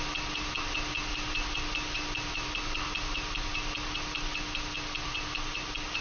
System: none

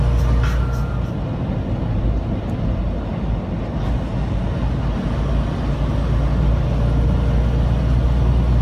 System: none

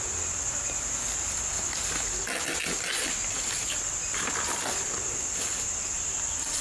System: none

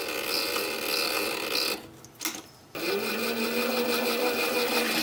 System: none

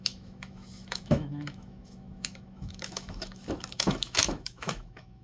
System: autoencoder, DAC-VAE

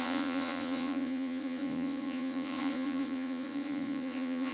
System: vocoder, Vocos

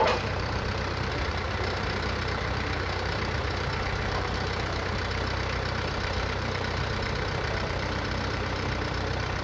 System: vocoder, BigVGAN v2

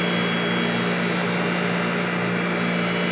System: none